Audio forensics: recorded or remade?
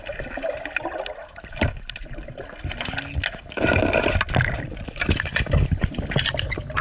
recorded